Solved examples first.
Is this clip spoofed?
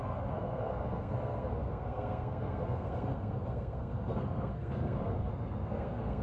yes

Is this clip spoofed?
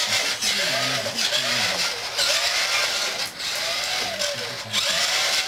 no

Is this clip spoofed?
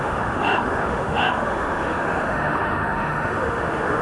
yes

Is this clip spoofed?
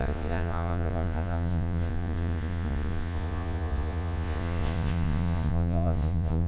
yes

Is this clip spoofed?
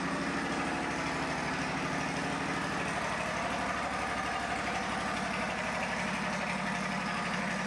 no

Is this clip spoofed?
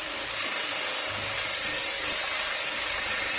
no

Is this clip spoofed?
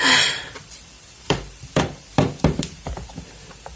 yes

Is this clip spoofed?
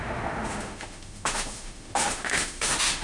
yes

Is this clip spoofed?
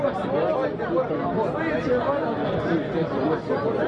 no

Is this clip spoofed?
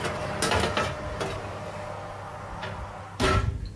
no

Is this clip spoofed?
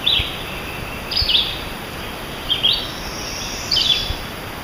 yes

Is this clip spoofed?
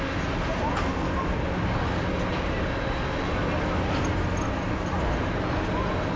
no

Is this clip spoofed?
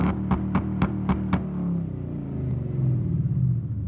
no